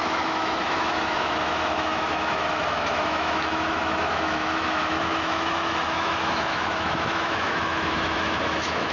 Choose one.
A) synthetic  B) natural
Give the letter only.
A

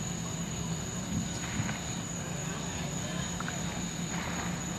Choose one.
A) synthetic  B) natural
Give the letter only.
B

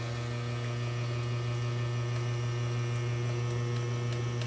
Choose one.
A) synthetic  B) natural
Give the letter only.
B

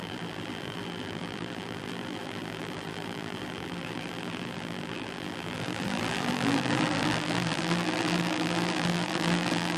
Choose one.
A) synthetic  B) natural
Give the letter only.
A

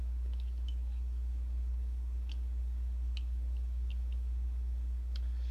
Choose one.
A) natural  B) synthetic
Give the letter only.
B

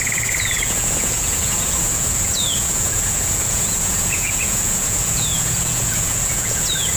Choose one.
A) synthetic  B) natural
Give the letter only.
A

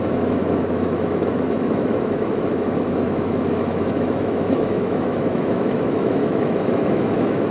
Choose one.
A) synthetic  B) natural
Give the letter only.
A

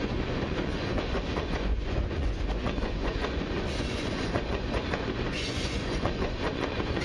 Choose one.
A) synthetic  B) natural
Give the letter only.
A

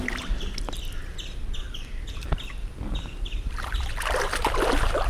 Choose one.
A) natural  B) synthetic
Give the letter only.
B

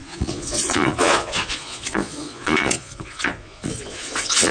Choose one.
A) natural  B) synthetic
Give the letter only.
B